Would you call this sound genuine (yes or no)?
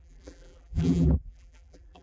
no